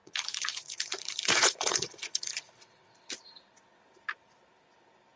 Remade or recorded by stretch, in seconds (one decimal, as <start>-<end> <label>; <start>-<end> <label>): 0.0-3.0 remade; 3.0-5.2 recorded